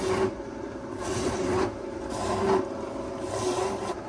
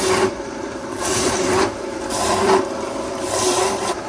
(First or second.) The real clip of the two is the first